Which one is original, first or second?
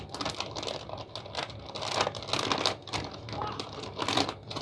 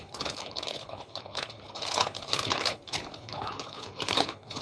first